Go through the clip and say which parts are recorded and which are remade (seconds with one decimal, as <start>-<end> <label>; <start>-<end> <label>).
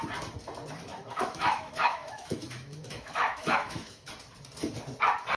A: 0.0-0.9 recorded; 0.9-4.1 remade; 4.1-5.4 recorded